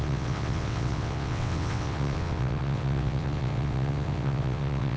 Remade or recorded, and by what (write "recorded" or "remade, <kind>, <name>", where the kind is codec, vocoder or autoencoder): remade, vocoder, WaveNeXt